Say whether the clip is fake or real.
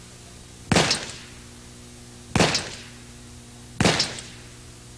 real